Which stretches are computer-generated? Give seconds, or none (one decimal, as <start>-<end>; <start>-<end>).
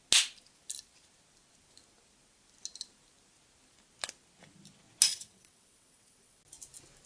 5.1-6.4